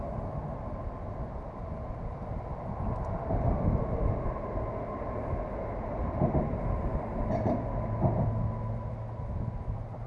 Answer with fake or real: real